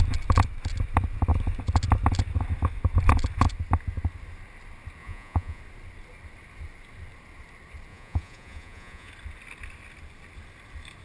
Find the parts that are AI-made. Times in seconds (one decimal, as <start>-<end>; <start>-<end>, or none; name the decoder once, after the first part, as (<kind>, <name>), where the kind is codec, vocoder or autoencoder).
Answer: 5.0-5.6 (vocoder, Vocos); 7.9-9.1

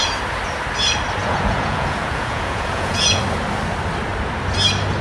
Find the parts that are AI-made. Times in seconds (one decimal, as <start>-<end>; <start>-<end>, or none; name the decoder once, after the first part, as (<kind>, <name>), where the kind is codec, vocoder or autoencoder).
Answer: 1.2-3.2 (vocoder, Vocos)

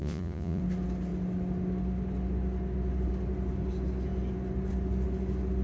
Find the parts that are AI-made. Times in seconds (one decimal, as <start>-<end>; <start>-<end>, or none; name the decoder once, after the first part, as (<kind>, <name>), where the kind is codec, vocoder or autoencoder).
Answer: 0.0-0.6 (vocoder, Vocos)

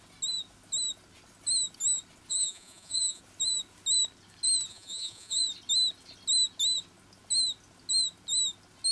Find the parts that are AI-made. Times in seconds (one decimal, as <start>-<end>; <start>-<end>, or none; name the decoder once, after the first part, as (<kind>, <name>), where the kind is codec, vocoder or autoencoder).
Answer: 2.3-3.2 (vocoder, Vocos); 4.7-5.4

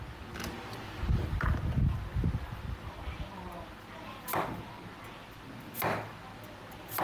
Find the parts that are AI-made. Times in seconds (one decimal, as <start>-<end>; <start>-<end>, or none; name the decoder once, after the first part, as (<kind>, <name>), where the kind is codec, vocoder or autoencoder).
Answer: none